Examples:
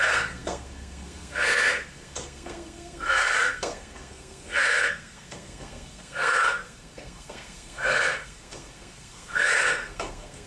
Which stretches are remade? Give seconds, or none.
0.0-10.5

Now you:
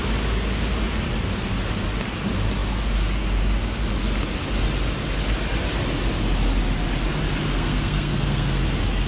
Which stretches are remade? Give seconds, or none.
7.5-8.6

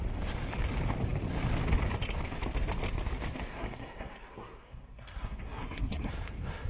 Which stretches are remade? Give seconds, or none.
3.5-6.1

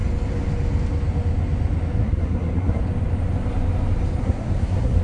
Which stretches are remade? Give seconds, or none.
2.0-2.8; 4.2-5.0

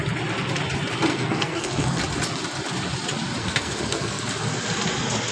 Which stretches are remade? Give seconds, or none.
1.1-2.0; 3.4-4.2